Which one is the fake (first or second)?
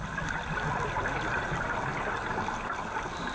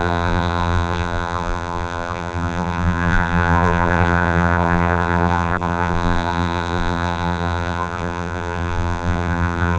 second